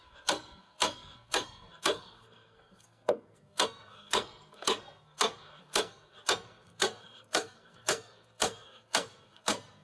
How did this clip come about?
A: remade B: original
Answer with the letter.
A